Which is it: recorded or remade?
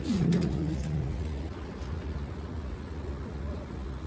remade